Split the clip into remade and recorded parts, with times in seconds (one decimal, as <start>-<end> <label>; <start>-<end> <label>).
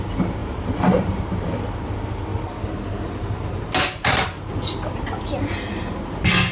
0.0-0.4 recorded; 0.4-1.6 remade; 1.6-6.5 recorded